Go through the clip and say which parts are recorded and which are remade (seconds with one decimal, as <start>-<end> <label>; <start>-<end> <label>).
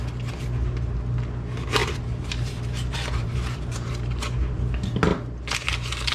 0.0-1.8 recorded; 1.8-2.5 remade; 2.5-3.2 recorded; 3.2-3.9 remade; 3.9-6.1 recorded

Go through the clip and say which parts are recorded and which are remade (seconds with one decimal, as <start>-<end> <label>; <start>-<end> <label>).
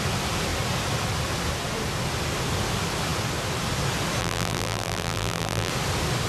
0.0-4.2 recorded; 4.2-5.7 remade; 5.7-6.3 recorded